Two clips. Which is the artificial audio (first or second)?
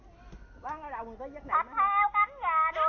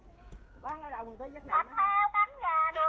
second